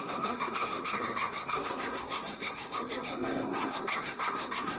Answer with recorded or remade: remade